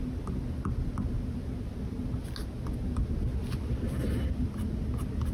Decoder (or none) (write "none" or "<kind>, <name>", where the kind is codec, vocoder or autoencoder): none